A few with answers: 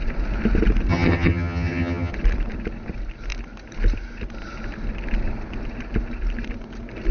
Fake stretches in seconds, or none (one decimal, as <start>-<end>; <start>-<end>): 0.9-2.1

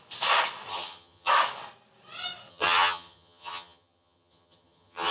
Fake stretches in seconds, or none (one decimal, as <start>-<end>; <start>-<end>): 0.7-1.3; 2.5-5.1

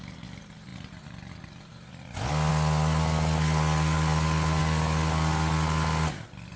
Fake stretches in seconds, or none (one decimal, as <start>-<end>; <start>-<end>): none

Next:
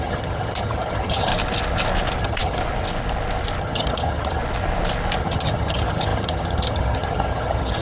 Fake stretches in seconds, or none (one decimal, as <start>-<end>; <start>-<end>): 0.0-1.3; 2.2-2.6; 3.6-4.4; 5.2-7.8